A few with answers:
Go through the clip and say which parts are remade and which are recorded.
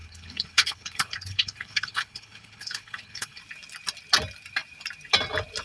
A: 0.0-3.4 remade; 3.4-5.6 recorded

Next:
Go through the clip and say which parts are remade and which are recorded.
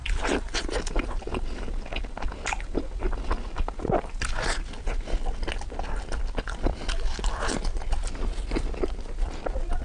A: 0.0-9.8 recorded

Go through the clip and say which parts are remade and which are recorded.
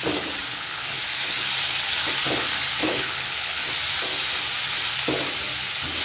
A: 0.0-0.5 recorded; 0.5-1.0 remade; 1.0-2.8 recorded; 2.8-3.6 remade; 3.6-6.0 recorded